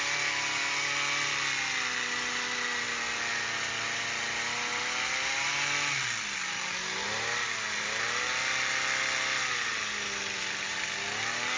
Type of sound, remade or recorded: recorded